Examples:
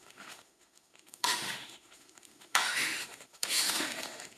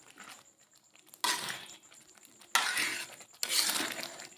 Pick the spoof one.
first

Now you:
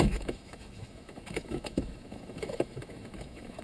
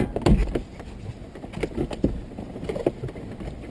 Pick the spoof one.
first